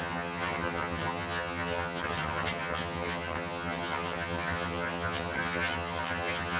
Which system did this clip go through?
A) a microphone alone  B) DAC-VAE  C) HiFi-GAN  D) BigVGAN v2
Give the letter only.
C